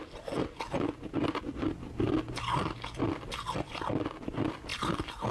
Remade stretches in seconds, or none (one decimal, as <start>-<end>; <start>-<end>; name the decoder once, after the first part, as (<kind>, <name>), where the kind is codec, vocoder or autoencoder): none